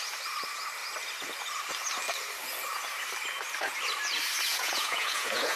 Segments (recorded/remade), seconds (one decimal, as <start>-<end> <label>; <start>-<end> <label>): 0.0-4.5 recorded; 4.5-5.6 remade